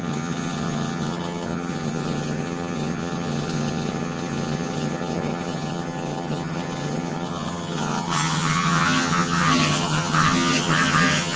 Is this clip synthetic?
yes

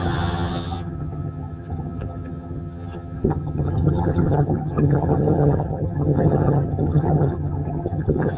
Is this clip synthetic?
yes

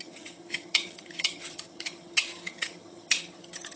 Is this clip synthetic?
yes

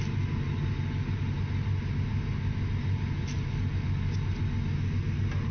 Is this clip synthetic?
no